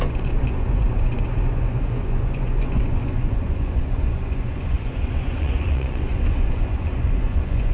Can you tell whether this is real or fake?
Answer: fake